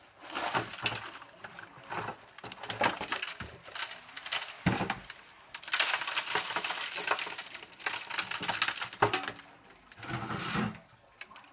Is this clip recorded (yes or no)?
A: yes